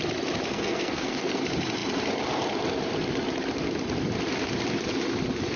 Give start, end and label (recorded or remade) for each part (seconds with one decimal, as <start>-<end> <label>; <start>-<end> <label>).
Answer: 0.0-0.5 recorded; 0.5-1.4 remade; 1.4-5.6 recorded